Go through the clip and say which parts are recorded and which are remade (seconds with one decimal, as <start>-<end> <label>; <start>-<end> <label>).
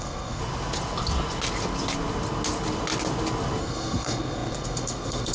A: 0.0-0.4 remade; 0.4-3.6 recorded; 3.6-5.3 remade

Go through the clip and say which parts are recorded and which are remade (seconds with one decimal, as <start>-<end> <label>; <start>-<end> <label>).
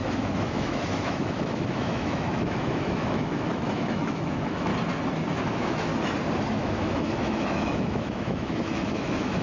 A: 0.0-4.7 remade; 4.7-5.5 recorded; 5.5-5.9 remade; 5.9-6.5 recorded; 6.5-9.4 remade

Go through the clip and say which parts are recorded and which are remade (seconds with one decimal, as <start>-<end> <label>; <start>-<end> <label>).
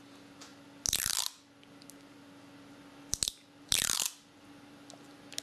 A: 0.0-5.4 recorded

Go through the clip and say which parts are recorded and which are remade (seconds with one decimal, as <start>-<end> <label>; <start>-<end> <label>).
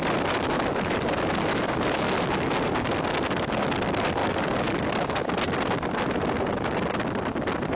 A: 0.0-7.8 recorded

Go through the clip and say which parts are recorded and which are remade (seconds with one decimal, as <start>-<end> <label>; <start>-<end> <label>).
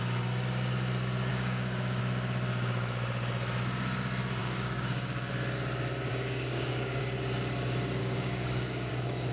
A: 0.0-1.3 recorded; 1.3-2.0 remade; 2.0-4.4 recorded; 4.4-5.3 remade; 5.3-6.1 recorded; 6.1-7.0 remade; 7.0-8.0 recorded; 8.0-8.9 remade; 8.9-9.3 recorded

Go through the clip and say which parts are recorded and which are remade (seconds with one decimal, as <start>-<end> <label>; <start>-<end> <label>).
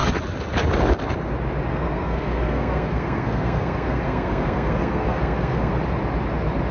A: 0.0-1.7 recorded; 1.7-5.7 remade; 5.7-6.7 recorded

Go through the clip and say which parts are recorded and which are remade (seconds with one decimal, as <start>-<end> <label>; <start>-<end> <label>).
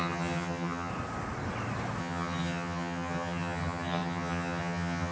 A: 0.0-0.9 remade; 0.9-2.0 recorded; 2.0-5.1 remade